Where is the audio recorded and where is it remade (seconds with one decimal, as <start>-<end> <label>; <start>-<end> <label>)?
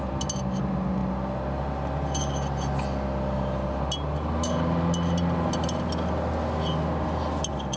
0.0-7.8 recorded